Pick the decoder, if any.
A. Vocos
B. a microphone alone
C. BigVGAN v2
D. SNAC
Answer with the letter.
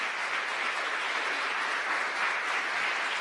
C